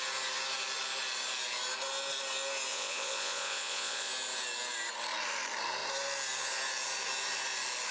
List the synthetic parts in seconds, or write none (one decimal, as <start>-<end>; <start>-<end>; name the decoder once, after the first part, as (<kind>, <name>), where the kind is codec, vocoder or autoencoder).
2.7-4.1 (vocoder, Vocos)